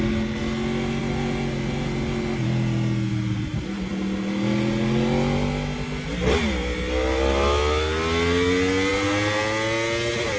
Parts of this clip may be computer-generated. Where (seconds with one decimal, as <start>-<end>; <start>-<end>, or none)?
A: none